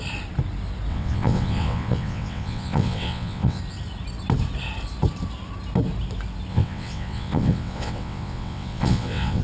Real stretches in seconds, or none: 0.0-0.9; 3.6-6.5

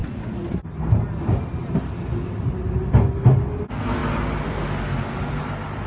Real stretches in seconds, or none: 0.0-5.9

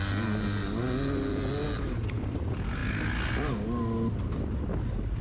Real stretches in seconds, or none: 0.0-5.2

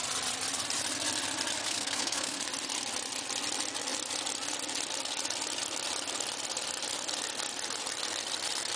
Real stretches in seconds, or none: 0.0-1.6; 2.4-8.8

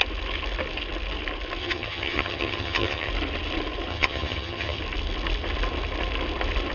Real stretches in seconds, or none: 0.0-1.6; 3.1-3.9; 4.8-6.7

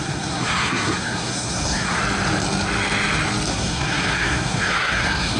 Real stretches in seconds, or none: 2.0-3.5

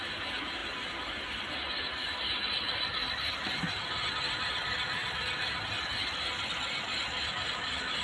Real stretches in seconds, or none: 0.0-8.0